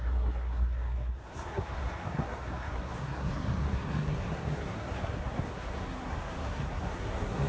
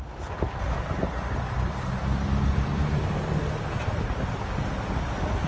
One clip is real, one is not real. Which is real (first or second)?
second